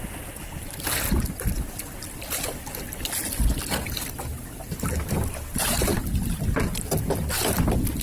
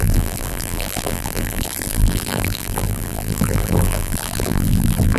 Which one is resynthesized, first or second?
second